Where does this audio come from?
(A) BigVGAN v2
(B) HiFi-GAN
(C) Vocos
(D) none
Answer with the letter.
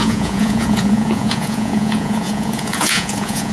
C